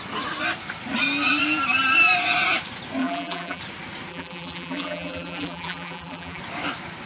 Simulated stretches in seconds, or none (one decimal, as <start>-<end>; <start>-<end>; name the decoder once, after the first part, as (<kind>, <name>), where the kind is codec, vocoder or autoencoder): 3.0-3.6 (vocoder, BigVGAN v2); 4.1-6.4